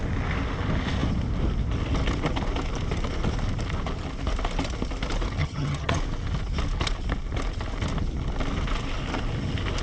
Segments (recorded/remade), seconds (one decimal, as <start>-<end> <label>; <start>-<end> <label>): 0.0-5.4 recorded; 5.4-6.0 remade; 6.0-9.8 recorded